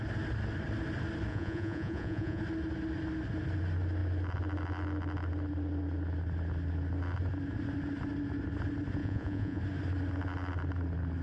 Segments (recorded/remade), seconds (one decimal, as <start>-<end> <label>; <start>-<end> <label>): 0.0-1.3 recorded; 1.3-2.4 remade; 2.4-9.0 recorded; 9.0-9.6 remade; 9.6-11.2 recorded